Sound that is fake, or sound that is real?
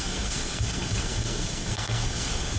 fake